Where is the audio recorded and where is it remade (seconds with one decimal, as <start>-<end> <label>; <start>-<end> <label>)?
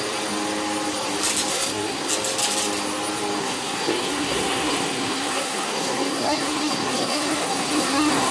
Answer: 0.0-1.5 recorded; 1.5-2.1 remade; 2.1-3.4 recorded; 3.4-8.3 remade